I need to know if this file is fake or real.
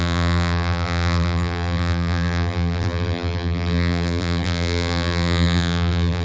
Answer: fake